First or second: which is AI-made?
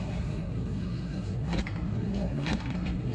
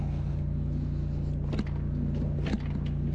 first